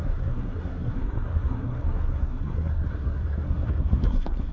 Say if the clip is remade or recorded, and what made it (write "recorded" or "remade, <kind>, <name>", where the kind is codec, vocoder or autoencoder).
remade, codec, SNAC